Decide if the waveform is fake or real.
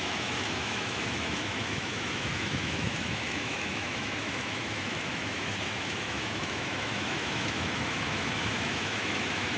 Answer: fake